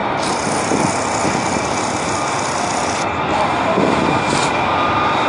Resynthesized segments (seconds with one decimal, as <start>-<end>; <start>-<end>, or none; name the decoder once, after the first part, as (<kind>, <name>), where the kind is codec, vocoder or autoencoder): none